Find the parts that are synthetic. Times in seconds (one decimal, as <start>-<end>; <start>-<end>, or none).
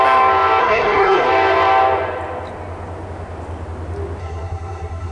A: 0.6-1.3; 4.2-5.1